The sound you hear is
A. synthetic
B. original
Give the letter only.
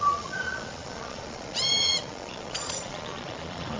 A